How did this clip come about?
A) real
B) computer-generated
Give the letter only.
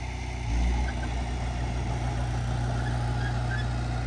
A